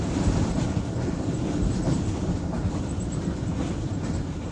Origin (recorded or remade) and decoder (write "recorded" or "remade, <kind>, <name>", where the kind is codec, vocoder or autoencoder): remade, vocoder, BigVGAN v2